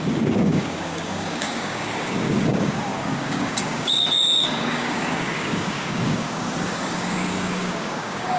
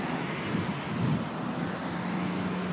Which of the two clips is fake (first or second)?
first